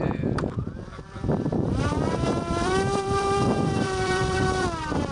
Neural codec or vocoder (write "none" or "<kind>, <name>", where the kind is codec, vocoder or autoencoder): vocoder, BigVGAN v2